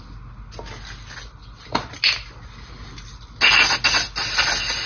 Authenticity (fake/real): real